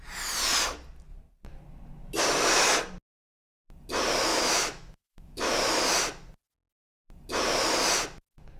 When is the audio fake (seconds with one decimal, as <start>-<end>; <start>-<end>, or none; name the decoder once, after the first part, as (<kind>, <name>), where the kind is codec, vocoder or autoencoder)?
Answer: 4.3-5.5 (autoencoder, DAC-VAE)